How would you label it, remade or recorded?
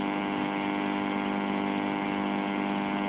recorded